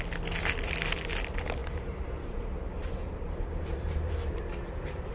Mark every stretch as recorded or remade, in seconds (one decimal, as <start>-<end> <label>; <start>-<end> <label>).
0.0-1.6 recorded; 1.6-5.1 remade